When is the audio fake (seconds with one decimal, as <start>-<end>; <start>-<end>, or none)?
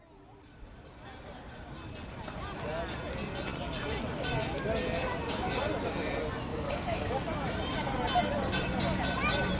6.5-7.1